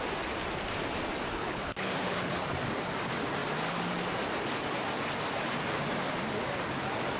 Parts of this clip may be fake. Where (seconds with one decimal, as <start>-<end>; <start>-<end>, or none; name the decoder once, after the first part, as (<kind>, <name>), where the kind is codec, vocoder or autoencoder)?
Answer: 1.3-2.5 (codec, HILCodec)